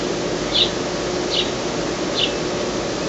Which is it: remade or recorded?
recorded